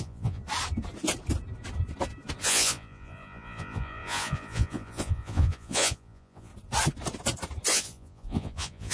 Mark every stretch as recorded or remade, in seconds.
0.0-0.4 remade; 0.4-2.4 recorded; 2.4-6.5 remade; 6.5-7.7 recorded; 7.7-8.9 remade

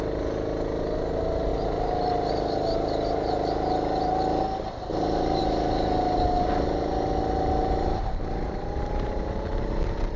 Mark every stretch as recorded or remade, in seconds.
0.0-10.2 recorded

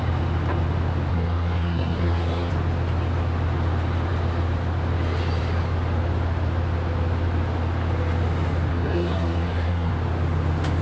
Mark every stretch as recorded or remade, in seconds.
0.0-1.1 recorded; 1.1-2.5 remade; 2.5-8.7 recorded; 8.7-9.9 remade; 9.9-10.8 recorded

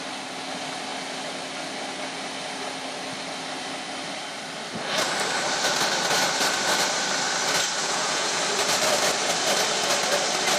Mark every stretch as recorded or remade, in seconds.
0.0-7.8 recorded; 7.8-8.4 remade; 8.4-10.6 recorded

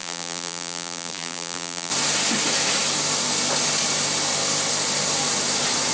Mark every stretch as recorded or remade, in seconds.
0.0-1.9 remade; 1.9-5.9 recorded

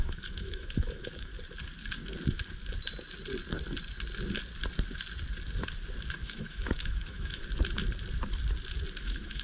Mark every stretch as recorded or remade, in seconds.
0.0-1.3 remade; 1.3-6.2 recorded; 6.2-7.4 remade; 7.4-9.0 recorded; 9.0-9.4 remade

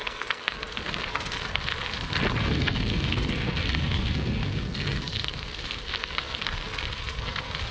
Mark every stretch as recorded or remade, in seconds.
0.0-1.7 remade; 1.7-2.4 recorded; 2.4-7.7 remade

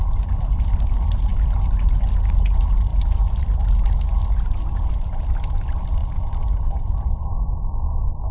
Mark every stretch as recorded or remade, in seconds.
0.0-8.3 recorded